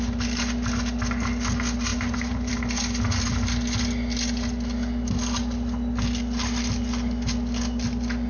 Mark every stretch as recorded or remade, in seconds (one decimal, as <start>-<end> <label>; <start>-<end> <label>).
0.0-1.9 recorded; 1.9-2.5 remade; 2.5-8.3 recorded

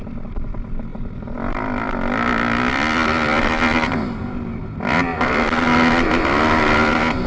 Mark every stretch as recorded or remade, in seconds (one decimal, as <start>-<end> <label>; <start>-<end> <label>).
0.0-0.9 recorded; 0.9-1.6 remade; 1.6-2.7 recorded; 2.7-3.6 remade; 3.6-7.3 recorded

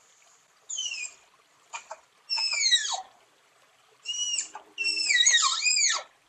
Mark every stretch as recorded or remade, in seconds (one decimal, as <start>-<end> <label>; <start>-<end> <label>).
0.0-2.8 recorded; 2.8-4.7 remade; 4.7-6.3 recorded

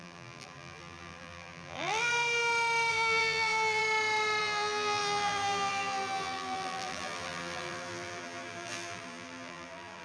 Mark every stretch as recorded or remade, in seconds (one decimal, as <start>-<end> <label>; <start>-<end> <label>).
0.0-2.1 remade; 2.1-2.9 recorded; 2.9-3.8 remade; 3.8-4.4 recorded; 4.4-10.0 remade

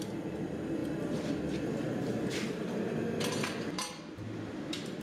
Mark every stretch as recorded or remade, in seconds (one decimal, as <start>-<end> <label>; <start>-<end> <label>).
0.0-5.0 remade

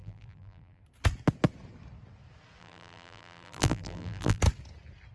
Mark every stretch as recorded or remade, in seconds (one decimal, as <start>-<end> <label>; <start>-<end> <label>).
0.0-0.8 remade; 0.8-2.6 recorded; 2.6-4.4 remade; 4.4-5.1 recorded

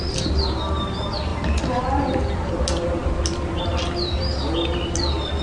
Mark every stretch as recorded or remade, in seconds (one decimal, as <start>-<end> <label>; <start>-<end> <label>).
0.0-5.4 recorded

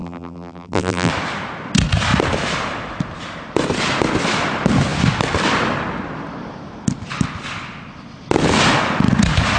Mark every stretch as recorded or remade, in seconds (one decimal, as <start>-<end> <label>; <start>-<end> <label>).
0.0-1.1 remade; 1.1-9.6 recorded